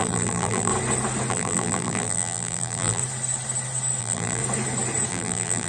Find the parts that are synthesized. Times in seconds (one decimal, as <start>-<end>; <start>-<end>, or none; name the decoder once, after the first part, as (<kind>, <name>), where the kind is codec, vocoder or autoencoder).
0.0-0.7 (vocoder, BigVGAN v2); 1.3-3.0; 4.0-4.4; 5.1-5.7